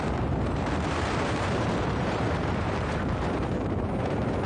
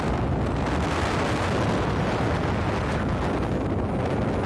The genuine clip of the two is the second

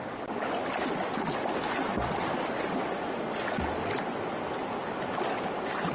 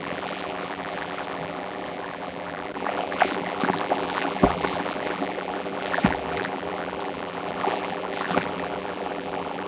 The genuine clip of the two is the first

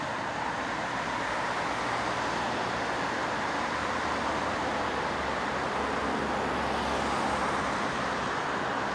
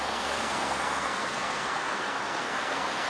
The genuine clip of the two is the first